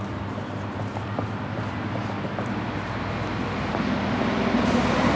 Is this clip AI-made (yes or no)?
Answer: no